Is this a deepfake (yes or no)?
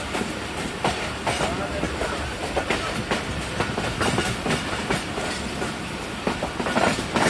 no